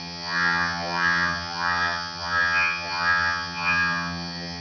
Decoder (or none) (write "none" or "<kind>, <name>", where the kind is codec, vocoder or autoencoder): vocoder, HiFi-GAN